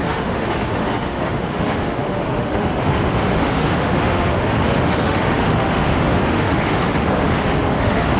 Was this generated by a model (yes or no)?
yes